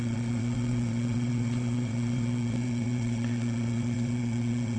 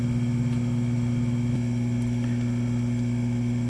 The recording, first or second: second